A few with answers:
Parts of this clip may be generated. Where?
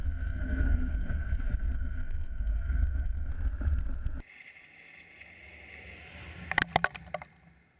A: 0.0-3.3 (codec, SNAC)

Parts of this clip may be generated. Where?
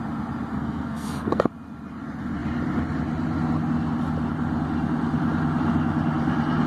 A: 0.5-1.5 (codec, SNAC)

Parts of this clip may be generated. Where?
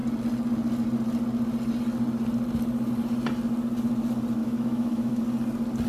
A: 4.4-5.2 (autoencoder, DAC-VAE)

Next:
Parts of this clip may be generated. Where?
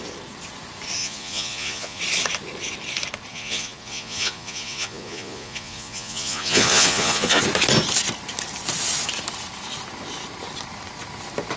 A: 1.0-2.0 (vocoder, Vocos); 3.3-7.4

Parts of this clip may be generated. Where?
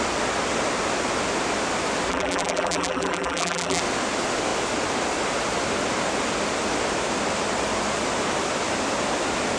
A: 2.1-3.8 (vocoder, BigVGAN v2)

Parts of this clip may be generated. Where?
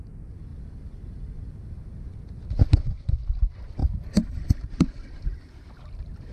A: 3.8-5.6 (vocoder, BigVGAN v2)